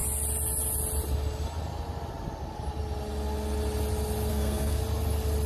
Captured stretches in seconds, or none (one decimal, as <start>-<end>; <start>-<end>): 0.0-4.3; 4.8-5.5